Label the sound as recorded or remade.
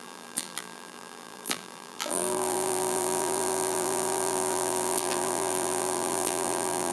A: remade